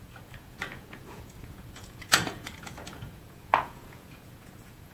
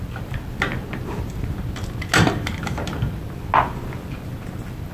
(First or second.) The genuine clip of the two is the second